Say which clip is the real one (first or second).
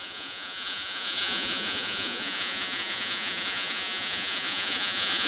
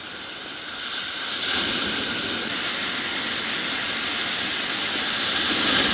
second